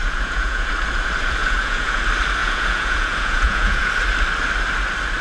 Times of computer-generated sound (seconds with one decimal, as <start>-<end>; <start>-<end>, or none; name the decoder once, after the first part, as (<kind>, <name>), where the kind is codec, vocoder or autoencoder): 0.0-0.7 (vocoder, Vocos); 1.4-2.0; 2.4-3.9